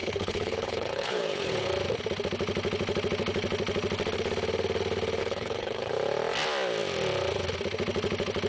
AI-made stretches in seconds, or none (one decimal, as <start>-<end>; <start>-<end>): 0.0-1.7; 5.2-5.9